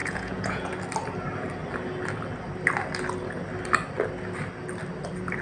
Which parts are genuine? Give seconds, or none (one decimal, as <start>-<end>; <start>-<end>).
0.7-5.4